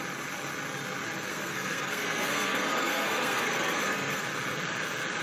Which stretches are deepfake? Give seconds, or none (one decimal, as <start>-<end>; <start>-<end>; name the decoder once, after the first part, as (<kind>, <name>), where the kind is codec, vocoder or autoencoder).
1.3-4.2 (codec, SNAC)